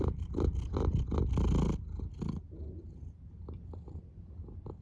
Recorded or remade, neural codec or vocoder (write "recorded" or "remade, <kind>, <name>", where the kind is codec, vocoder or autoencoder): recorded